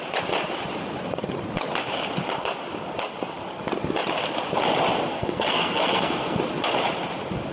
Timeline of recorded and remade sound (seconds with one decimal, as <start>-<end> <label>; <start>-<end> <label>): 0.0-5.1 recorded; 5.1-6.4 remade; 6.4-7.5 recorded

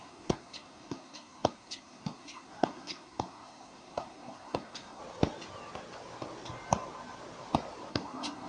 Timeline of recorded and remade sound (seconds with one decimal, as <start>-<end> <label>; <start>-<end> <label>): 0.0-5.0 remade; 5.0-7.9 recorded; 7.9-8.5 remade

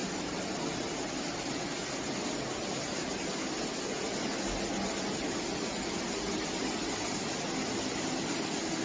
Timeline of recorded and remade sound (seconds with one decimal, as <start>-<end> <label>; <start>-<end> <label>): 0.0-0.5 remade; 0.5-8.8 recorded

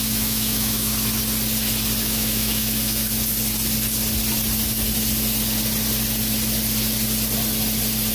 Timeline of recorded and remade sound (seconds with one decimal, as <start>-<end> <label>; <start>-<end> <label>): 0.0-0.9 remade; 0.9-2.0 recorded; 2.0-3.0 remade; 3.0-8.1 recorded

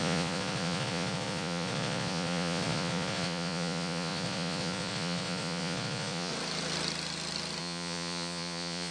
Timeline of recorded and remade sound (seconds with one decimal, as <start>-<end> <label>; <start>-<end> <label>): 0.0-6.3 remade; 6.3-7.6 recorded; 7.6-8.9 remade

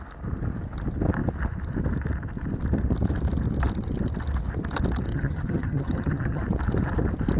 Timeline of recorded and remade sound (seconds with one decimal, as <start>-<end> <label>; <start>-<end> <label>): 0.0-5.1 recorded; 5.1-6.4 remade; 6.4-7.4 recorded

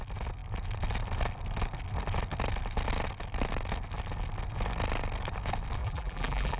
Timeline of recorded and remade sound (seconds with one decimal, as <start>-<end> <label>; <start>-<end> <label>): 0.0-5.8 recorded; 5.8-6.6 remade

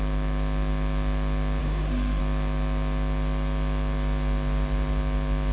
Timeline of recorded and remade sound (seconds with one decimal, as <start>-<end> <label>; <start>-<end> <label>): 0.0-1.6 recorded; 1.6-2.2 remade; 2.2-5.5 recorded